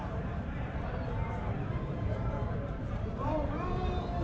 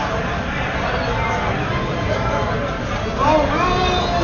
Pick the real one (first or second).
second